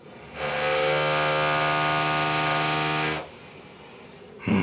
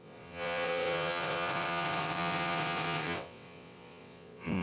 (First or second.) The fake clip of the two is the second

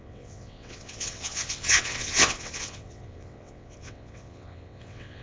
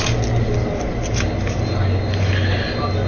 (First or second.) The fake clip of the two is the first